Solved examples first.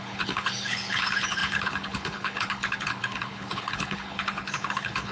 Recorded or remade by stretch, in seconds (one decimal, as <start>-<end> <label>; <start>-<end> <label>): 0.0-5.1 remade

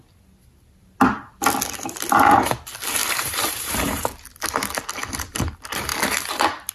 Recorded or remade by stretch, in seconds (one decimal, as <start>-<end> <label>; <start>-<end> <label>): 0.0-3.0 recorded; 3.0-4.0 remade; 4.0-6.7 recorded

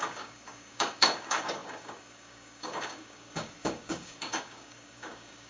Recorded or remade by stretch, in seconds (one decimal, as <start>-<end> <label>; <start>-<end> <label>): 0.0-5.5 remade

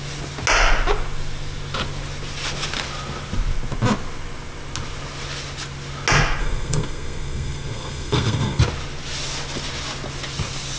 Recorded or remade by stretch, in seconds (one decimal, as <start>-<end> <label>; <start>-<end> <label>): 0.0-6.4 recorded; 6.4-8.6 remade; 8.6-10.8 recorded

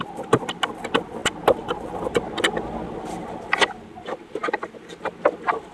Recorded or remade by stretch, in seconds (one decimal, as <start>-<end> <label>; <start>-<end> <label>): 0.0-5.7 recorded